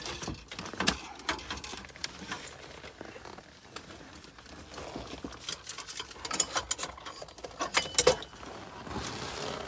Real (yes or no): yes